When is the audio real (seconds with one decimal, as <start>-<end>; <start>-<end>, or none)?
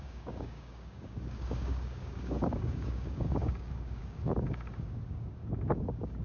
none